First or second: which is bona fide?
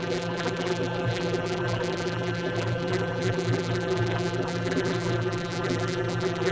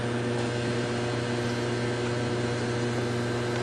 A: second